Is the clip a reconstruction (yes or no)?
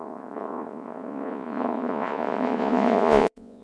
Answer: yes